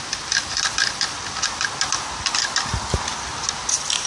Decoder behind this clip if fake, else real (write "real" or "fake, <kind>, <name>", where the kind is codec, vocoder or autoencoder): real